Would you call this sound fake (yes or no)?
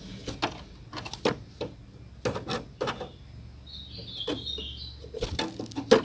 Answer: no